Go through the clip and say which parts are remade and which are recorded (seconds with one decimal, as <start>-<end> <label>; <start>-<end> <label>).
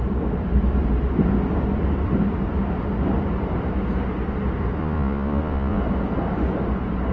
0.0-4.8 recorded; 4.8-5.8 remade; 5.8-7.1 recorded